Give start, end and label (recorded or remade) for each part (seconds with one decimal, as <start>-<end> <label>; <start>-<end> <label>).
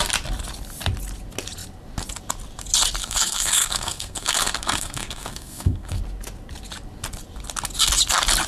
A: 0.0-3.0 recorded; 3.0-6.0 remade; 6.0-8.5 recorded